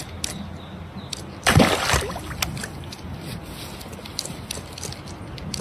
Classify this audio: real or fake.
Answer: real